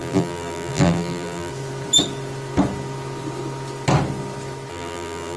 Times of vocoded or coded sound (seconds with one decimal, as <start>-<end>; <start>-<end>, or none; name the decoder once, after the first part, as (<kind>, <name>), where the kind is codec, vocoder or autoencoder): 0.0-1.5 (vocoder, BigVGAN v2); 4.7-5.4